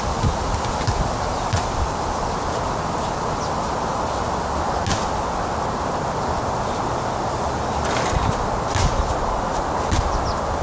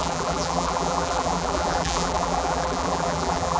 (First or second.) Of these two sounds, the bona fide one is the first